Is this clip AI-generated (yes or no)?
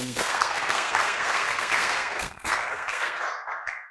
yes